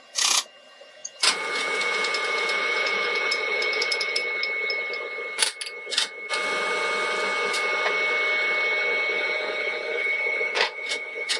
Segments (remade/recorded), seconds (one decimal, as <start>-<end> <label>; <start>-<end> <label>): 0.0-4.2 remade; 4.2-9.1 recorded; 9.1-11.4 remade